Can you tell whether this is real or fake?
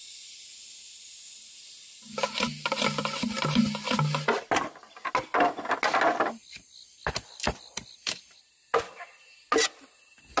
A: real